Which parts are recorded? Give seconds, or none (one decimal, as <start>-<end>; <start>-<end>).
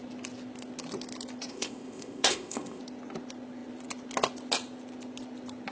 0.0-1.5; 2.8-5.7